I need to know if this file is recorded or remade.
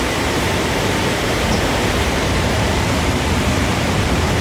remade